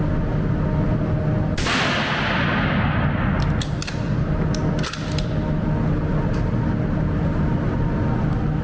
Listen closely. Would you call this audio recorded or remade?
recorded